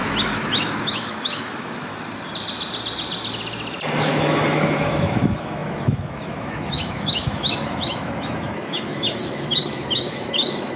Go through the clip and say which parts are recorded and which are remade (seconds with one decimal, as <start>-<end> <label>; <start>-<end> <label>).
0.0-1.9 remade; 1.9-4.0 recorded; 4.0-10.8 remade